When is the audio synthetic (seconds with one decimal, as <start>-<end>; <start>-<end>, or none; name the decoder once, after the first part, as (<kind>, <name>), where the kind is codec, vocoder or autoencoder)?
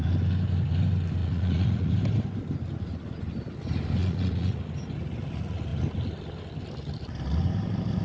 1.2-1.9 (vocoder, Vocos); 4.0-4.6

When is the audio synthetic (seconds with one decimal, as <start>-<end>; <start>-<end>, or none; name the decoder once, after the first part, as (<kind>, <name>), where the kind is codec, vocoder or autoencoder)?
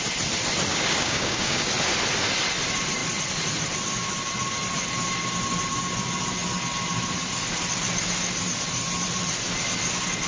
0.7-1.7 (codec, DAC)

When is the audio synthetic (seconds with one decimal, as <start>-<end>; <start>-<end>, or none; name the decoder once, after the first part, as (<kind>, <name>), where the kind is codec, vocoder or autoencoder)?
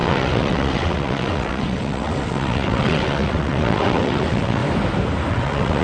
0.0-4.6 (vocoder, WaveNeXt); 5.3-5.8